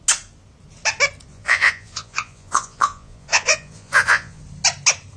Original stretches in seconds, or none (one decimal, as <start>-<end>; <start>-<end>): 0.0-1.3; 4.4-5.2